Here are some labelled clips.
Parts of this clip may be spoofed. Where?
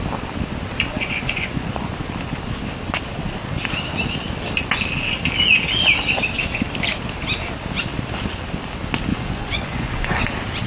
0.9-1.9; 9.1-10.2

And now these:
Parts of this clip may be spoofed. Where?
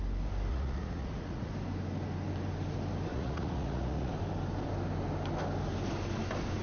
0.5-1.5; 3.1-4.1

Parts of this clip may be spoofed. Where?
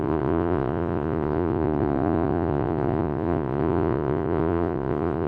0.0-5.3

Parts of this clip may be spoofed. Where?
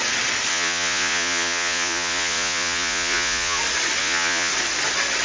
0.5-3.6; 4.0-4.5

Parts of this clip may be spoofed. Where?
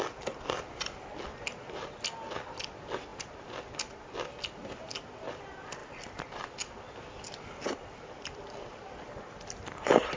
none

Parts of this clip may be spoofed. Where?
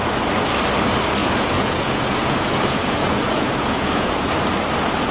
1.2-4.3